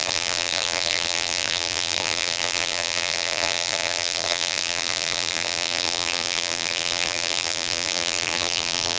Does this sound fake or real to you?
fake